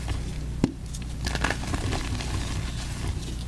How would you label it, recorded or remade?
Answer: recorded